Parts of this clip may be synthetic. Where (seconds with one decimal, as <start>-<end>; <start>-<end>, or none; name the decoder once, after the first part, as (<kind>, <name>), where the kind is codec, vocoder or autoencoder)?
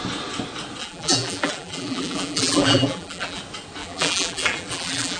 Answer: 0.8-3.4 (vocoder, BigVGAN v2); 3.8-5.2